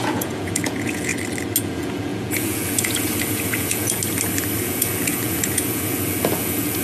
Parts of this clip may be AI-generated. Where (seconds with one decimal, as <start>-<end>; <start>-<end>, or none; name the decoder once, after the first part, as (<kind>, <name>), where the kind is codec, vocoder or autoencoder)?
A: 0.0-1.1 (vocoder, Vocos); 1.6-4.0; 4.6-6.8